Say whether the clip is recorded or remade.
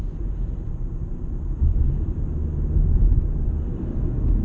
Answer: recorded